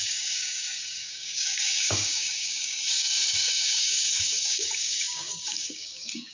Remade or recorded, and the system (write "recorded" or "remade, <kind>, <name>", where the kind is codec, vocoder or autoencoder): remade, codec, DAC